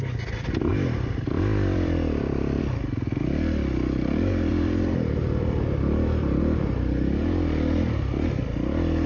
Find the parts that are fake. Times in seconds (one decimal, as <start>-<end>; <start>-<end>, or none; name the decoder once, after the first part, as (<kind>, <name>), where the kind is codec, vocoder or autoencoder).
0.7-2.6 (vocoder, BigVGAN v2); 4.5-6.4